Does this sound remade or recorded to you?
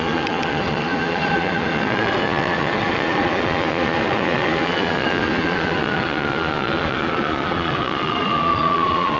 remade